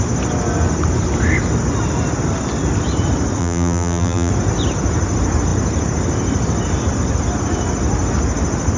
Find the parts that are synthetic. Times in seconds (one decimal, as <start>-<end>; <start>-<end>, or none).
3.4-4.3